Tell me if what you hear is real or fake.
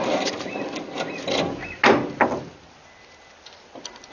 real